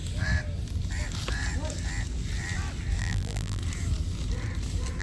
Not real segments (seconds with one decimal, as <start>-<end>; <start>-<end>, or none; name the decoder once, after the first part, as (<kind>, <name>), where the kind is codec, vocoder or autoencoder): 3.0-3.6 (vocoder, BigVGAN v2)